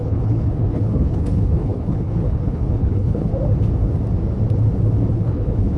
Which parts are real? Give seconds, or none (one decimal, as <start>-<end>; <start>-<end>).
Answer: 3.3-5.1